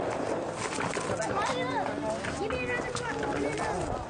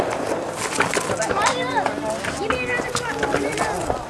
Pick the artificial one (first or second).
second